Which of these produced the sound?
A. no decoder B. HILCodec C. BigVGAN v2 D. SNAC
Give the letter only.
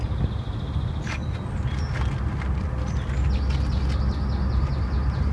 A